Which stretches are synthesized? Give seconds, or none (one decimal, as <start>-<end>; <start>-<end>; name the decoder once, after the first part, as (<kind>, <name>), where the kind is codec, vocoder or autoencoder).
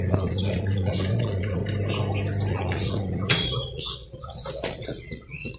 0.0-1.6 (vocoder, Vocos); 2.5-5.6